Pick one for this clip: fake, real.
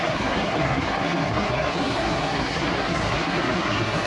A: fake